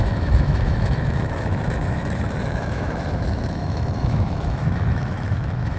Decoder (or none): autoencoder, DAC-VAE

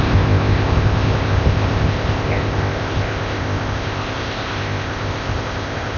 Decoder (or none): codec, ZipCodec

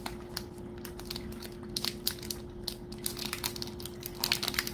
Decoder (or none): none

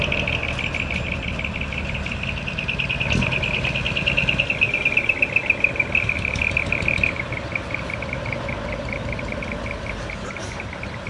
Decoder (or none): none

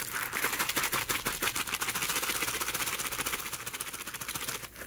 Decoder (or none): none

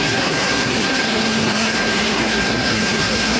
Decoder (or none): codec, SNAC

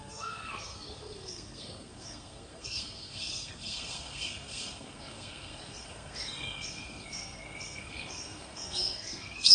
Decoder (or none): codec, SNAC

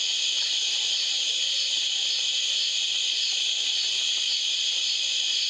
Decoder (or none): vocoder, BigVGAN v2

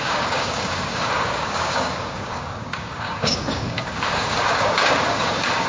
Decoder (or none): codec, DAC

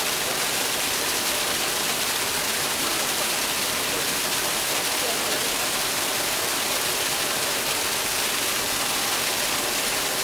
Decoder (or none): none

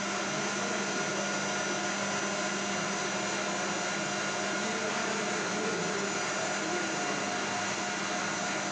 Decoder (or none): none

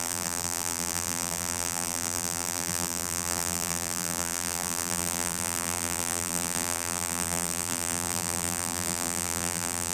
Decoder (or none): vocoder, BigVGAN v2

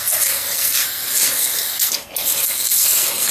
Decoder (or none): codec, SNAC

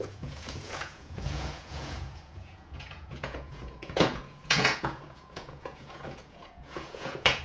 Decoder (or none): vocoder, Vocos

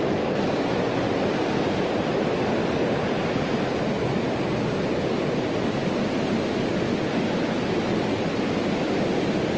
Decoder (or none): none